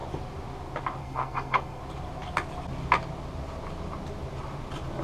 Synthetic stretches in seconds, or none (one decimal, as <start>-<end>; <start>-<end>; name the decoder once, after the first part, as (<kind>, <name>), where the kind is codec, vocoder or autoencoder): 1.0-1.8 (codec, SNAC)